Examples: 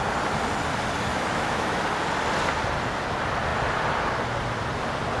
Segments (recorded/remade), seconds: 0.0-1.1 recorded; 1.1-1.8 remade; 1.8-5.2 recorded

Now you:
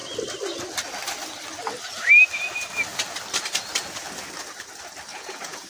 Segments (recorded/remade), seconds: 0.0-5.1 recorded; 5.1-5.7 remade

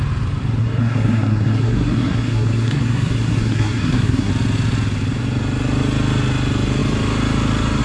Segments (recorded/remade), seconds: 0.0-0.6 recorded; 0.6-4.3 remade; 4.3-7.8 recorded

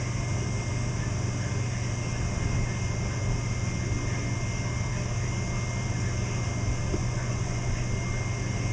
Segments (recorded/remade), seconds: 0.0-7.0 recorded; 7.0-7.8 remade; 7.8-8.7 recorded

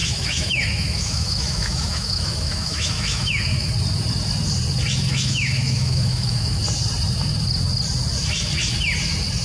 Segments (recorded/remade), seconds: 0.0-3.7 remade; 3.7-5.1 recorded; 5.1-6.6 remade; 6.6-9.4 recorded